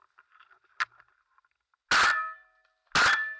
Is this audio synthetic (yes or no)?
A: no